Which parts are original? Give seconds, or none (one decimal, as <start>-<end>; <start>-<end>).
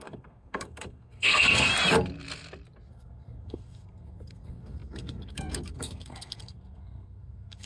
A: 1.7-2.9